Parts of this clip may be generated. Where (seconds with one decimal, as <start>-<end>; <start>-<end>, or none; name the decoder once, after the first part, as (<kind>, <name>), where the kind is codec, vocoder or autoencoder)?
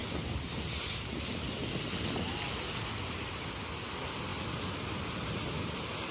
none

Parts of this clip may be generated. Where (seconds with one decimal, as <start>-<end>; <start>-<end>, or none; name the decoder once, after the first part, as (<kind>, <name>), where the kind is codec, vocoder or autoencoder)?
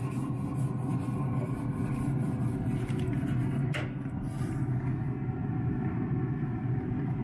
none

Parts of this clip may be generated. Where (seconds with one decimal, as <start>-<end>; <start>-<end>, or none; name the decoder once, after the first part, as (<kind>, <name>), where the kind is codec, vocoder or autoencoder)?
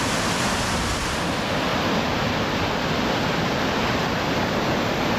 none